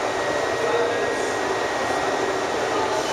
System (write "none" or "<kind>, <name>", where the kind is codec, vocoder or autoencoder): none